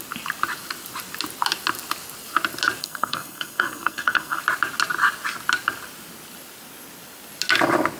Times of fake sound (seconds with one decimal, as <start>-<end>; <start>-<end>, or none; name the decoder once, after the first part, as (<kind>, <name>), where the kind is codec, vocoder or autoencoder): 2.8-4.4 (codec, SNAC)